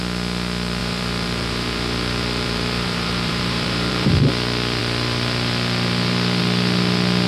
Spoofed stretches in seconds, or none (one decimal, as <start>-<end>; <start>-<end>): 0.8-4.1